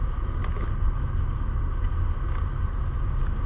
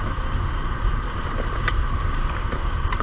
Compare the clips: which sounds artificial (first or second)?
second